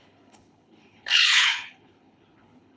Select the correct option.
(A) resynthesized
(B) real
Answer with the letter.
A